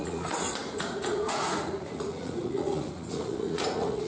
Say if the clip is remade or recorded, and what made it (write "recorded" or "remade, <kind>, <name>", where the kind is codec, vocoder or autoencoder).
remade, vocoder, Vocos